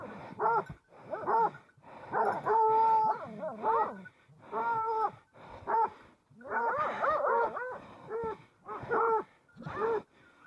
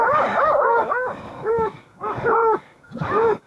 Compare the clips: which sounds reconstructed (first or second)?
second